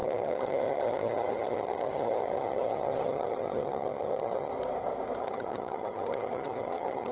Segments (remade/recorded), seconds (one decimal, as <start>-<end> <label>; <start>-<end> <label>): 0.0-4.5 remade; 4.5-5.2 recorded; 5.2-7.1 remade